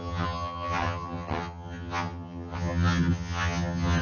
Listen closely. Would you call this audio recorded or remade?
remade